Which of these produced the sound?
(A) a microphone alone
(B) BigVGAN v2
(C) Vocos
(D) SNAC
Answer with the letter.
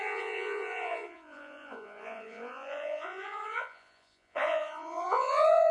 C